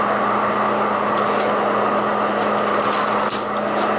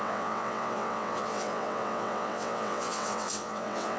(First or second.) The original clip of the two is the first